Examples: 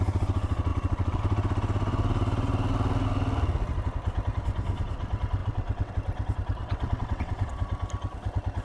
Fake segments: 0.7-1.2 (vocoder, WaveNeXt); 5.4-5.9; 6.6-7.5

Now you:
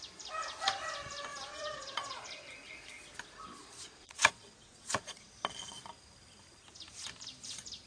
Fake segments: 1.3-2.2 (vocoder, Vocos); 3.6-5.3

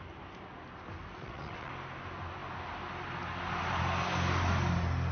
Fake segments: 1.2-1.7 (vocoder, WaveNeXt)

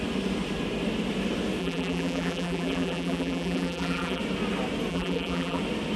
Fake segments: 1.6-4.2 (vocoder, BigVGAN v2); 4.9-5.6